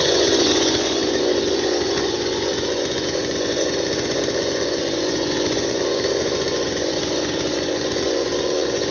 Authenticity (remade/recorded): remade